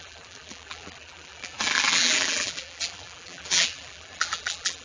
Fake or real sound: fake